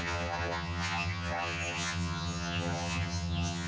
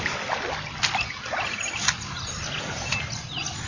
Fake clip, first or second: first